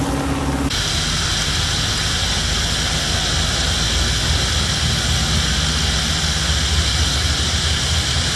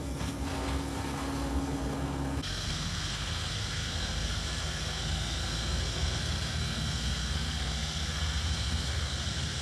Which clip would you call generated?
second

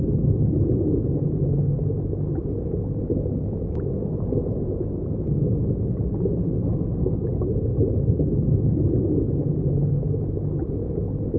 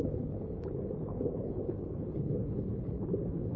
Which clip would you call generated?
second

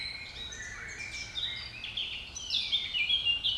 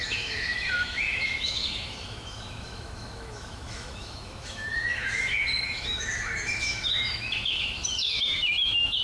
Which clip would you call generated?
second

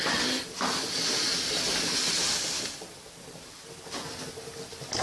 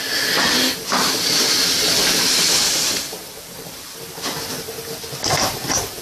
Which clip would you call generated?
second